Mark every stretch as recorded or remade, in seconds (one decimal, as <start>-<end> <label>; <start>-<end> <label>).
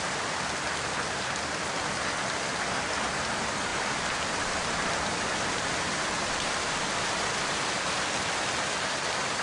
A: 0.0-3.7 recorded; 3.7-6.4 remade; 6.4-9.4 recorded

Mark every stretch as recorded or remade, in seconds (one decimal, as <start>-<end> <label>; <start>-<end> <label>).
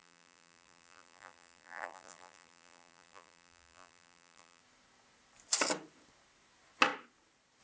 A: 0.0-4.6 remade; 4.6-7.6 recorded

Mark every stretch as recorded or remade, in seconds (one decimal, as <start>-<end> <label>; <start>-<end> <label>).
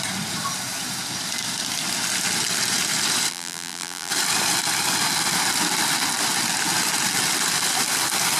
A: 0.0-3.3 recorded; 3.3-4.1 remade; 4.1-8.4 recorded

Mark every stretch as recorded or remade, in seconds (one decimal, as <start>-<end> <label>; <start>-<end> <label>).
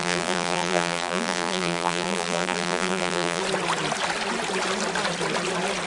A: 0.0-3.4 remade; 3.4-5.9 recorded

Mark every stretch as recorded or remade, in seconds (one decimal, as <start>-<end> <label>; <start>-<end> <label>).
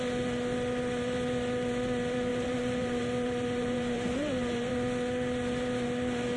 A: 0.0-2.3 recorded; 2.3-4.7 remade; 4.7-6.4 recorded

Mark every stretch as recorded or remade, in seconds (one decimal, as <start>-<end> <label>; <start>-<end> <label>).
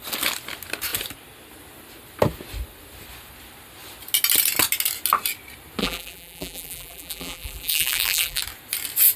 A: 0.0-5.8 recorded; 5.8-8.4 remade; 8.4-9.2 recorded